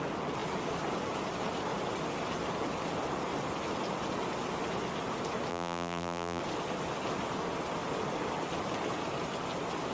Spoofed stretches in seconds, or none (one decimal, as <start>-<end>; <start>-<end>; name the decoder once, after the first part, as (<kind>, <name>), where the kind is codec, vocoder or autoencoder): 5.5-6.4 (vocoder, BigVGAN v2)